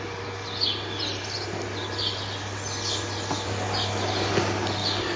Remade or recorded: recorded